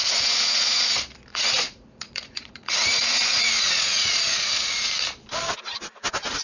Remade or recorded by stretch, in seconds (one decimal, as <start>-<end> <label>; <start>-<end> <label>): 0.0-0.9 remade; 0.9-1.3 recorded; 1.3-4.9 remade; 4.9-6.4 recorded